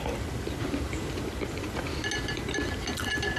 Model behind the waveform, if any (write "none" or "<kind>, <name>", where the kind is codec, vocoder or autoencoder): none